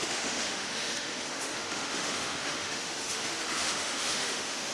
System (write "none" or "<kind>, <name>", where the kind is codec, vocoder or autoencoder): autoencoder, DAC-VAE